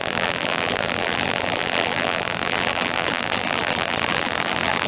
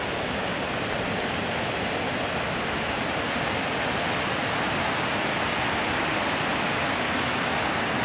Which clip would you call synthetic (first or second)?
first